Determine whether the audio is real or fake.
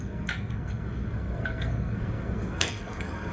fake